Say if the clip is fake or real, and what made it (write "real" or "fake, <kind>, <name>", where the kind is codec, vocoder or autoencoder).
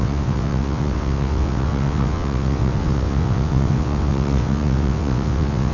fake, vocoder, WaveNeXt